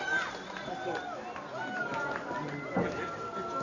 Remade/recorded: recorded